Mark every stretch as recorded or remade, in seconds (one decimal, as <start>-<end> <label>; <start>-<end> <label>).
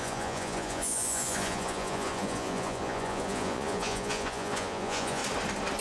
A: 0.0-5.2 remade; 5.2-5.8 recorded